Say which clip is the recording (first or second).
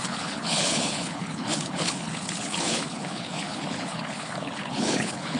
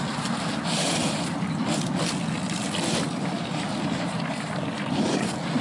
second